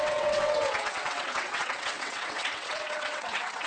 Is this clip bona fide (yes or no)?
no